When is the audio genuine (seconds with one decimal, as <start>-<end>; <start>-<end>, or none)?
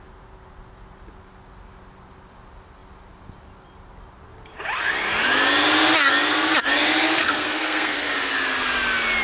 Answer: 0.0-7.2; 8.1-9.2